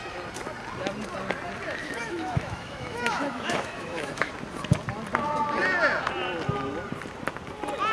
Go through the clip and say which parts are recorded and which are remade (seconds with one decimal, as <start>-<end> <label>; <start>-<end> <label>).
0.0-1.8 recorded; 1.8-4.3 remade; 4.3-7.9 recorded